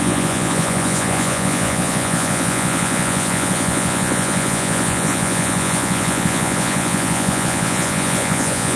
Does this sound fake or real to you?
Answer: fake